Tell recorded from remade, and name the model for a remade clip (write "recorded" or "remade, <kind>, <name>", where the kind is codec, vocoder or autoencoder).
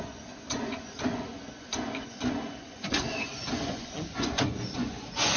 remade, vocoder, Vocos